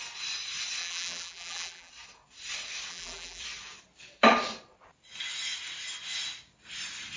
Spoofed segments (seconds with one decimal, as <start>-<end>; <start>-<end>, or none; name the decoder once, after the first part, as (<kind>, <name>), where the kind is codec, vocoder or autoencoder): 0.8-1.9 (vocoder, BigVGAN v2); 2.9-3.4

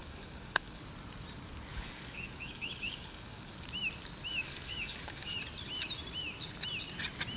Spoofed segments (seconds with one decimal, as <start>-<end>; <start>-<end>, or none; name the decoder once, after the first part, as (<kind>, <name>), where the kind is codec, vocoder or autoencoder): 0.0-0.8 (codec, DAC); 1.7-3.5; 4.3-5.4

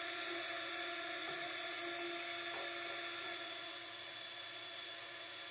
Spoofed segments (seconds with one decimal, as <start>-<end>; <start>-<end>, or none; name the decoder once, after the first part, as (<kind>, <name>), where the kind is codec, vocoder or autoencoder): 0.0-1.8 (vocoder, Vocos); 3.2-5.5

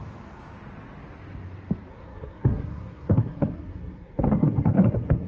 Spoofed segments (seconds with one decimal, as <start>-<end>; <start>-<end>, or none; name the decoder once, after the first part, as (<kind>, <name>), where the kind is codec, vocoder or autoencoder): 1.9-5.3 (codec, SNAC)